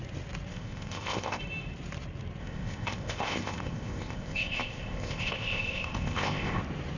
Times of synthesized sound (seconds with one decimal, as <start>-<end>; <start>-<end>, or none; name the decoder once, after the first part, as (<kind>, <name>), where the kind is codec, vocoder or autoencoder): 0.5-1.4 (codec, ZipCodec); 2.4-6.6